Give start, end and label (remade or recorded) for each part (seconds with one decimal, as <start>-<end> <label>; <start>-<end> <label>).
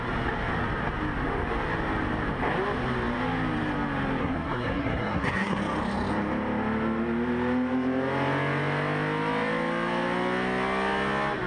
0.0-4.2 recorded; 4.2-5.6 remade; 5.6-11.5 recorded